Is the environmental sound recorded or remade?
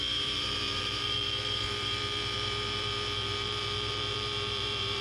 remade